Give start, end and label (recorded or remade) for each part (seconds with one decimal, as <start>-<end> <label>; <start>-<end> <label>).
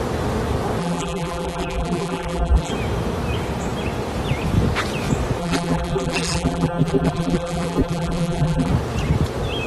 0.0-0.8 recorded; 0.8-2.7 remade; 2.7-5.4 recorded; 5.4-8.7 remade; 8.7-9.7 recorded